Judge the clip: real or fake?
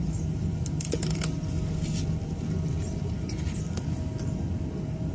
real